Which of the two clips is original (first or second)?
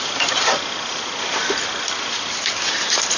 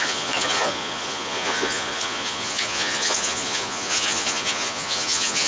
first